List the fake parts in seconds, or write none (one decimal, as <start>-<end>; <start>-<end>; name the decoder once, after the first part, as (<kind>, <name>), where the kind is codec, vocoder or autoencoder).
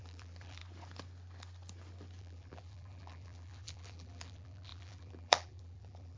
0.0-0.6 (vocoder, BigVGAN v2); 2.2-6.2